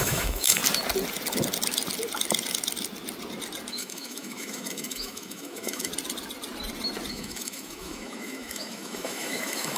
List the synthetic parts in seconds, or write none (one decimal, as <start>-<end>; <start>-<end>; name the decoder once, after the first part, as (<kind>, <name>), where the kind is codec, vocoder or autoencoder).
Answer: 0.0-0.6 (autoencoder, DAC-VAE); 3.7-5.9; 7.1-9.8